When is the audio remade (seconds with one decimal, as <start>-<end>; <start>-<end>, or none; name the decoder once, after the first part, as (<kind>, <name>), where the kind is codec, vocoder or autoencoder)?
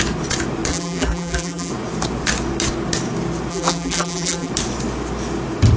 0.7-1.7 (vocoder, BigVGAN v2); 3.5-4.5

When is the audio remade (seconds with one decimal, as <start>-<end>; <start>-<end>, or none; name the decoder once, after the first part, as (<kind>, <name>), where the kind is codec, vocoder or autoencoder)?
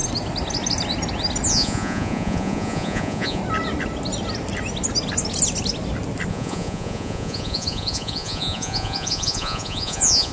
1.5-3.4 (vocoder, Vocos); 6.3-10.3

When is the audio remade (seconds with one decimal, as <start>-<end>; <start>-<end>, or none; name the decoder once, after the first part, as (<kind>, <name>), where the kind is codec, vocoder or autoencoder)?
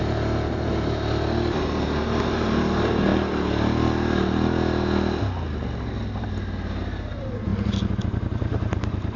0.0-3.1 (vocoder, BigVGAN v2); 6.2-7.5; 8.0-9.2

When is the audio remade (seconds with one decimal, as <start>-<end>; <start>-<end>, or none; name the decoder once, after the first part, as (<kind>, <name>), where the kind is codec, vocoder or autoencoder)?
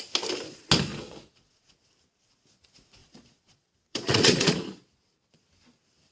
0.9-1.7 (vocoder, Vocos); 3.0-4.7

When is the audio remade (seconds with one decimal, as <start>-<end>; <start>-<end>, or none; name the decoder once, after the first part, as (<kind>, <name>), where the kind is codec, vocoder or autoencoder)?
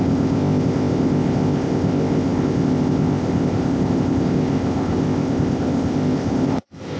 0.0-7.0 (codec, ZipCodec)